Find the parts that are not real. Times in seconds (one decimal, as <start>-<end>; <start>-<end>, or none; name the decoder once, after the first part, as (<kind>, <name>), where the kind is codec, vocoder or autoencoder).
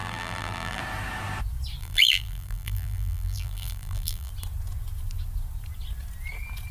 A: 0.0-0.8 (vocoder, BigVGAN v2); 1.8-4.3